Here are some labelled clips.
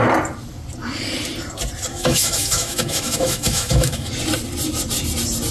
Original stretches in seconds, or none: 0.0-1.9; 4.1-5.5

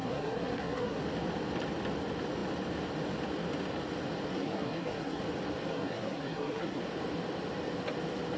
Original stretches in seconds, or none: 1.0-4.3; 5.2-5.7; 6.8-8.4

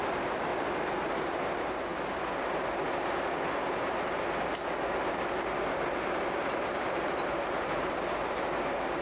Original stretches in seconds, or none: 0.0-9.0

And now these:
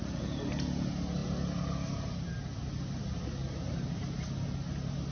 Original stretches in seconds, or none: 0.0-5.1

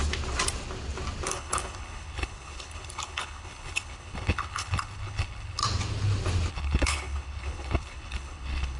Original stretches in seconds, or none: 0.0-1.3; 5.6-6.5

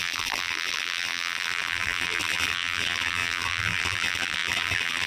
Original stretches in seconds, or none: none